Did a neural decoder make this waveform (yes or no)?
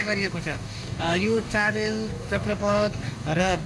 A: yes